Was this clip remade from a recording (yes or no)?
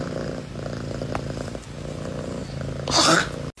no